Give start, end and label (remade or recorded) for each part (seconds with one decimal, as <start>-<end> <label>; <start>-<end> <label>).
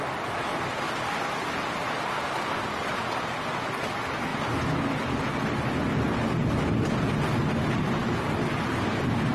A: 0.0-4.3 recorded; 4.3-5.0 remade; 5.0-9.3 recorded